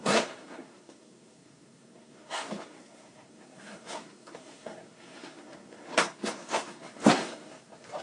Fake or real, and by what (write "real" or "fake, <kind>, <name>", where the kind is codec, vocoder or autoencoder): fake, codec, SNAC